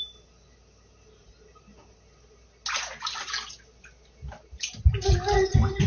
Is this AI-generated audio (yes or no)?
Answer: no